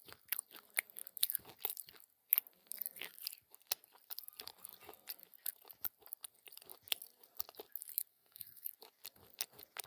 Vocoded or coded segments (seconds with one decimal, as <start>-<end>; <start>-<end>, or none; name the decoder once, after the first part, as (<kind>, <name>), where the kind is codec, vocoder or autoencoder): 8.1-8.7 (codec, SNAC)